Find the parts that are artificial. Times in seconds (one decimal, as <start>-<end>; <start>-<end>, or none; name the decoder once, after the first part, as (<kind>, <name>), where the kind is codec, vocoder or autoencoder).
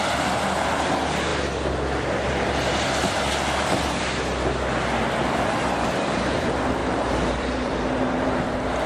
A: 6.8-8.9 (vocoder, BigVGAN v2)